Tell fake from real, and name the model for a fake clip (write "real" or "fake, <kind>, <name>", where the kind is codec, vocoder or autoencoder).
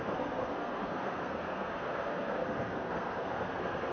fake, codec, SNAC